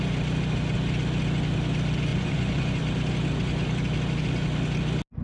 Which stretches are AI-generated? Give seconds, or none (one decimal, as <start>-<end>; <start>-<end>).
2.1-2.8